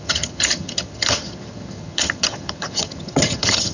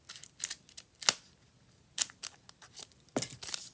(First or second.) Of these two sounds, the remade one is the first